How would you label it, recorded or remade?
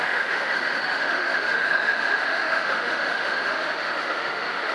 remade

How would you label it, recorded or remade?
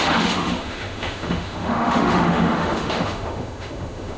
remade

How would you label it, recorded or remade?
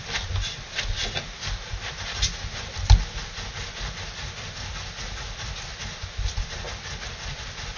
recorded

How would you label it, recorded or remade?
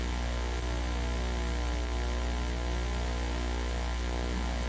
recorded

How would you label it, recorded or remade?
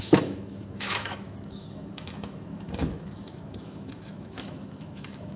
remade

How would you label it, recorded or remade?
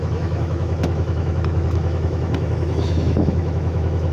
remade